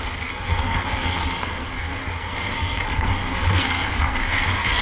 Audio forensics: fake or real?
fake